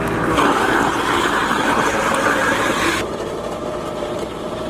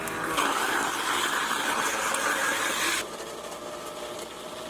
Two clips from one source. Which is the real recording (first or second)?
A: second